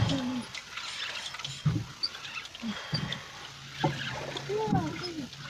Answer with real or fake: real